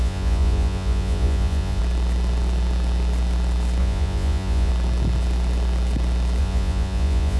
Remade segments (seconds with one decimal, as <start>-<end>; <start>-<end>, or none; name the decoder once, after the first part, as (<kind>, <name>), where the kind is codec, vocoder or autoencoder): 0.0-1.8 (vocoder, Vocos); 3.8-4.7; 6.4-7.4